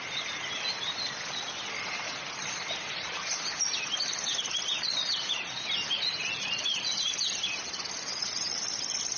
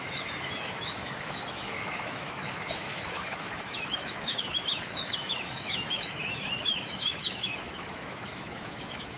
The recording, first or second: first